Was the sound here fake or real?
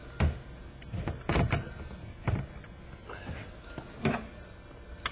real